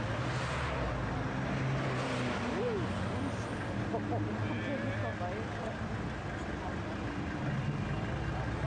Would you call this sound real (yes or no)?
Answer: yes